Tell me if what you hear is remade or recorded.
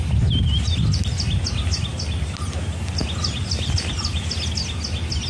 recorded